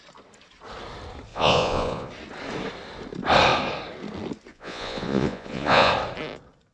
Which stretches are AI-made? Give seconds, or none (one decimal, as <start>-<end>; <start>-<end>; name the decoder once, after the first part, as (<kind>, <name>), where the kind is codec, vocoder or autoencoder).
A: 1.3-2.1 (vocoder, Vocos); 4.5-5.9